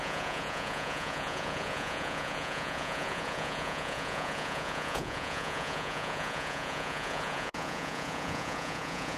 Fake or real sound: fake